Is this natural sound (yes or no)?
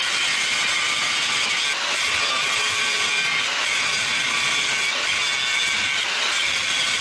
yes